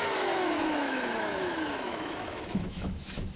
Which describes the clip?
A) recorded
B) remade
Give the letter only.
B